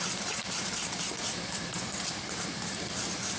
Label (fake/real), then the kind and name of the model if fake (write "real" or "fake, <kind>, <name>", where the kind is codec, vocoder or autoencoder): real